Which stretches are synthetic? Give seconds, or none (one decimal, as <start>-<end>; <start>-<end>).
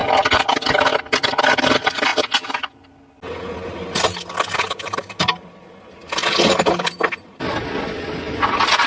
none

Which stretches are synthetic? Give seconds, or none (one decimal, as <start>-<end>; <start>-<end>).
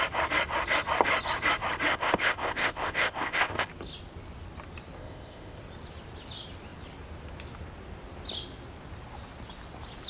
1.9-3.7; 5.0-5.6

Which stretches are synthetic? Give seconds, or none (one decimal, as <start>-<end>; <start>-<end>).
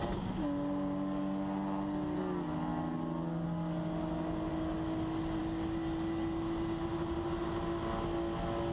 none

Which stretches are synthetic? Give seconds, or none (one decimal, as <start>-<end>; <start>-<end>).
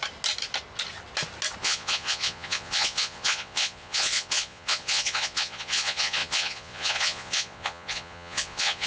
1.6-8.9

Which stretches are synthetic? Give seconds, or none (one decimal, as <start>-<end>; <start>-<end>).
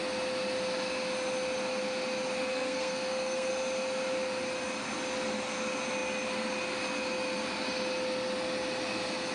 2.5-3.5